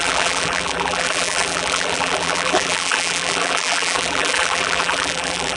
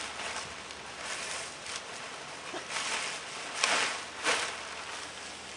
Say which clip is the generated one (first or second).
first